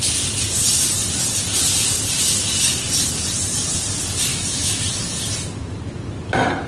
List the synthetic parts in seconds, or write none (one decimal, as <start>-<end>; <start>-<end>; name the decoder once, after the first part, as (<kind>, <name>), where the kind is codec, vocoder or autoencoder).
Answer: 4.3-4.8 (autoencoder, DAC-VAE)